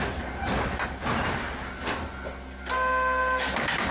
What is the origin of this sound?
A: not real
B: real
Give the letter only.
B